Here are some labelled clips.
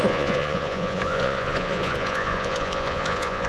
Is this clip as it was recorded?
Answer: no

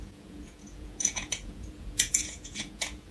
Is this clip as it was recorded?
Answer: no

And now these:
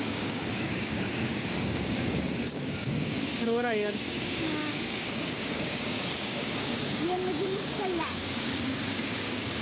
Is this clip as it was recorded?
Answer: no